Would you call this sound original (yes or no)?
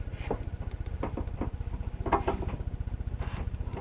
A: yes